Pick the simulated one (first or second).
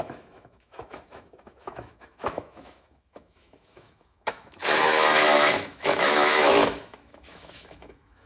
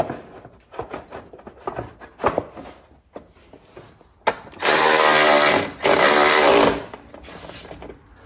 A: first